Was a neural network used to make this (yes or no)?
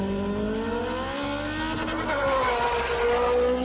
no